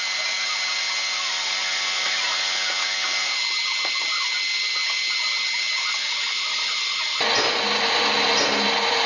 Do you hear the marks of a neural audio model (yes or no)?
no